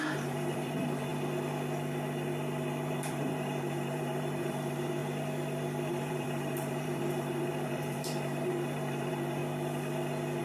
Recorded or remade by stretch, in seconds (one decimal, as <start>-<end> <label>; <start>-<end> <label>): 0.0-1.1 remade; 1.1-2.9 recorded; 2.9-5.0 remade; 5.0-5.9 recorded; 5.9-9.4 remade; 9.4-10.4 recorded